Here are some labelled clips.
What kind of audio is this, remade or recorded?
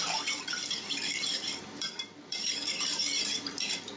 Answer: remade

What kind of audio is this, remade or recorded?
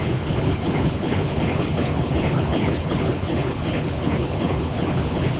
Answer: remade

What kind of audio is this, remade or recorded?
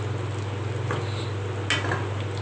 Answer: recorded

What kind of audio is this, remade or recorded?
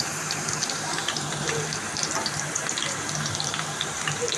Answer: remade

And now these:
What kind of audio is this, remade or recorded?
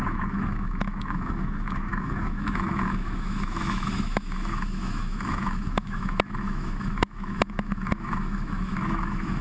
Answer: remade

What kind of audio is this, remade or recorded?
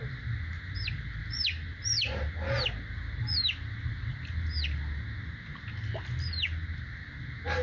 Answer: recorded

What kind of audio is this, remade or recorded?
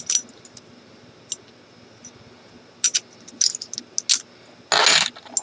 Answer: recorded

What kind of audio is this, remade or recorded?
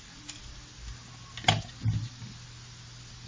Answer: recorded